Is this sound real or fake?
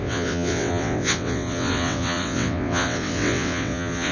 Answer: fake